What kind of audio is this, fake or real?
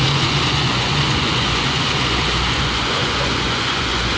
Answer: fake